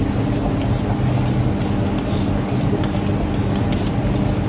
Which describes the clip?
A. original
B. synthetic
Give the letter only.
A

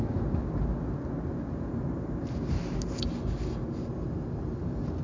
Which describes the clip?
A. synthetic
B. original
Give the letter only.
B